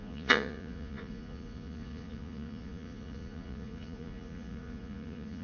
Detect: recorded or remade remade